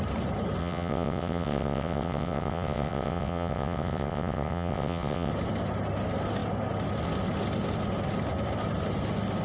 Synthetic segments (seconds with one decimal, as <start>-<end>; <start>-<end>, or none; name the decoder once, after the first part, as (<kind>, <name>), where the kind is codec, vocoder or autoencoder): 0.6-5.3 (vocoder, WaveNeXt)